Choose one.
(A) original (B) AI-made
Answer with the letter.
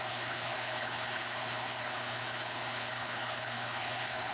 B